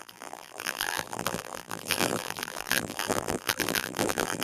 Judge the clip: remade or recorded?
remade